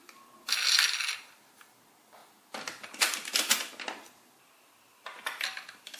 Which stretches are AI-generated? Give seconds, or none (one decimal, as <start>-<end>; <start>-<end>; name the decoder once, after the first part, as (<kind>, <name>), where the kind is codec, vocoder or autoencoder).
none